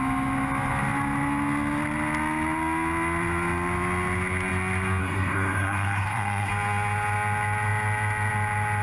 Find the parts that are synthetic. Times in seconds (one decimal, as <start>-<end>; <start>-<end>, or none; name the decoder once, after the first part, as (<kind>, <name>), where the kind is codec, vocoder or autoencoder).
5.0-6.5 (codec, SNAC)